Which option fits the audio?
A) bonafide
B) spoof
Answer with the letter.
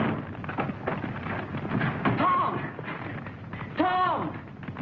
A